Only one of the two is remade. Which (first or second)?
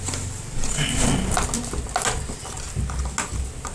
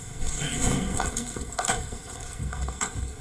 second